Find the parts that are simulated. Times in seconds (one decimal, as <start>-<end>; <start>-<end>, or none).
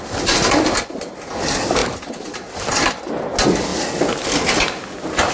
1.8-3.0